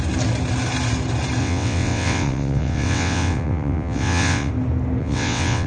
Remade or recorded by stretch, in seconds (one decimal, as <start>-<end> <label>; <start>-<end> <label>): 0.0-1.4 recorded; 1.4-4.5 remade; 4.5-5.0 recorded; 5.0-5.7 remade